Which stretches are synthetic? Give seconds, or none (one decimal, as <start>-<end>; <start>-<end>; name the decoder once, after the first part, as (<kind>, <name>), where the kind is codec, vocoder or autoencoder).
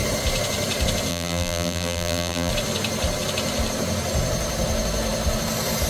1.1-2.5 (vocoder, BigVGAN v2)